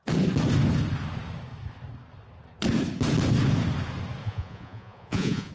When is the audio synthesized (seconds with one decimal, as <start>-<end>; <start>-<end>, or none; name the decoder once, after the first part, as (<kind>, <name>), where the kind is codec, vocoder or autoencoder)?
4.2-5.5 (vocoder, Vocos)